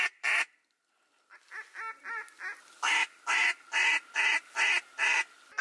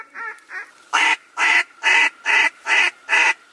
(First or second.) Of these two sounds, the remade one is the second